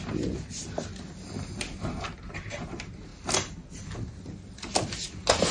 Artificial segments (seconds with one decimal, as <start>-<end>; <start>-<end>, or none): none